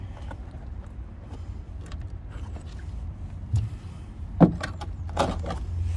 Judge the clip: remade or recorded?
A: recorded